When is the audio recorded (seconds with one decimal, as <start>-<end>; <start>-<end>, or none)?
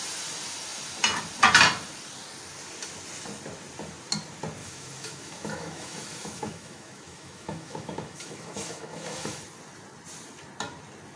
0.0-4.6; 9.4-11.2